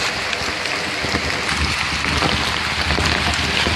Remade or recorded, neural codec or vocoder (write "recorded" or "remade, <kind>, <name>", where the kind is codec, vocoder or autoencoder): recorded